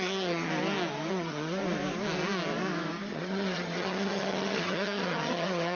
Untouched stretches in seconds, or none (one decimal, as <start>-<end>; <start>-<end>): 0.5-1.1; 1.6-3.1